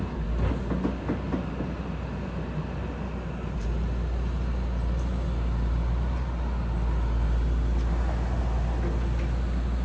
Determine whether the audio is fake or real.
real